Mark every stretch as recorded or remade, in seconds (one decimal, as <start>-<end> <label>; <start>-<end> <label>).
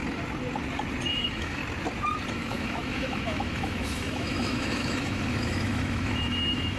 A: 0.0-1.1 recorded; 1.1-1.6 remade; 1.6-2.3 recorded; 2.3-6.8 remade